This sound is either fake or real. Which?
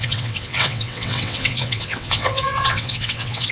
fake